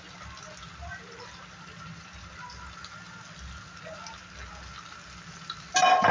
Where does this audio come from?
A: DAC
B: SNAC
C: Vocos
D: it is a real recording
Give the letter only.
D